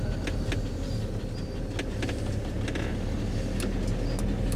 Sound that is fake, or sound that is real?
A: real